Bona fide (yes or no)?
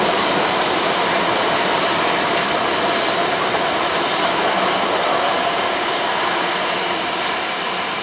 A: no